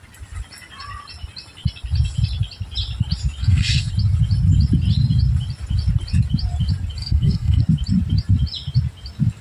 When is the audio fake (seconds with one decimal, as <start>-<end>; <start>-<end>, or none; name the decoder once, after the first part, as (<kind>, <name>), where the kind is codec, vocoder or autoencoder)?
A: 3.4-3.9 (codec, SNAC); 7.0-7.6